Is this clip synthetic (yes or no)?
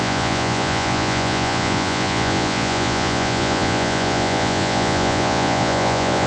yes